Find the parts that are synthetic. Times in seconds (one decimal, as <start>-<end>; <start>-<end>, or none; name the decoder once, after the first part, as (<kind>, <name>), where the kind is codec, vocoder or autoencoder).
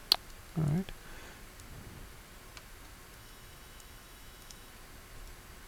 3.2-4.7 (autoencoder, DAC-VAE)